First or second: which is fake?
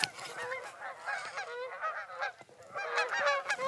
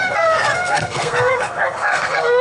second